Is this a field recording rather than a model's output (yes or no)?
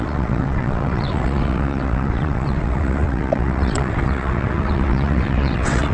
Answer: no